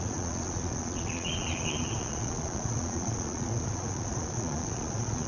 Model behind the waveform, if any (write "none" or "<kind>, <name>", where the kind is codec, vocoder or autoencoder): vocoder, Vocos